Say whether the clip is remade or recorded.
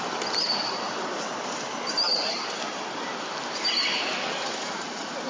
recorded